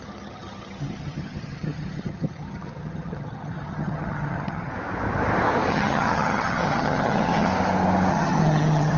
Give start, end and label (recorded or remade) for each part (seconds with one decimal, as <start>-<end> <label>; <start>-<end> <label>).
0.0-4.7 remade; 4.7-5.7 recorded; 5.7-7.5 remade; 7.5-8.1 recorded; 8.1-9.0 remade

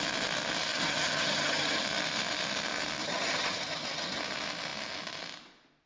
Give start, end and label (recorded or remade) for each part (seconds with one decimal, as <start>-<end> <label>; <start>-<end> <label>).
0.0-0.7 recorded; 0.7-1.8 remade; 1.8-3.0 recorded; 3.0-4.2 remade; 4.2-5.9 recorded

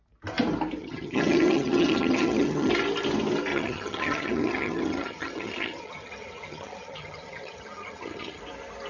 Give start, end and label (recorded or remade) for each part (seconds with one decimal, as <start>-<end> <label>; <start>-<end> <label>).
0.0-0.8 recorded; 0.8-2.7 remade; 2.7-3.5 recorded; 3.5-8.4 remade; 8.4-8.9 recorded

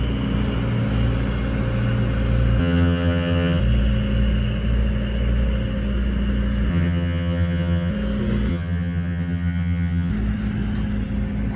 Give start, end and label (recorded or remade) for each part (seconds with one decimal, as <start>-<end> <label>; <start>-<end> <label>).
0.0-2.6 recorded; 2.6-3.6 remade; 3.6-6.7 recorded; 6.7-7.9 remade; 7.9-8.5 recorded; 8.5-10.1 remade; 10.1-11.6 recorded

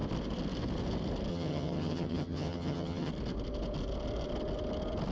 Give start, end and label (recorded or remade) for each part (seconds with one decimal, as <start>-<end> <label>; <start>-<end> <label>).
0.0-1.3 recorded; 1.3-3.1 remade; 3.1-5.1 recorded

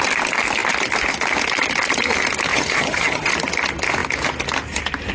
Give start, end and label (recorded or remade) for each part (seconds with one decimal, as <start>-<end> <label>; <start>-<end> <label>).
0.0-2.5 recorded; 2.5-3.3 remade; 3.3-5.1 recorded

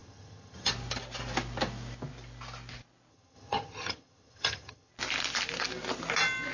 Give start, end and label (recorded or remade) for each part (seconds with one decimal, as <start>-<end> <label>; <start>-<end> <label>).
0.0-0.7 remade; 0.7-3.1 recorded; 3.1-4.9 remade; 4.9-6.5 recorded